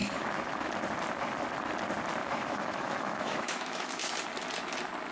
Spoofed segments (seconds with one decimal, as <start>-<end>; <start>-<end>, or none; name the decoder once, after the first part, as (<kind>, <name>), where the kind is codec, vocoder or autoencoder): 0.0-0.7 (autoencoder, DAC-VAE); 2.2-4.0